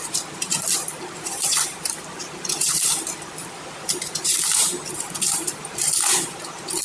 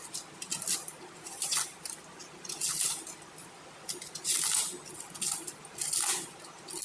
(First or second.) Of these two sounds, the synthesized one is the first